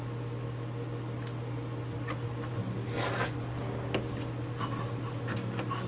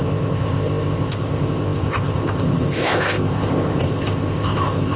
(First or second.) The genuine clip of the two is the first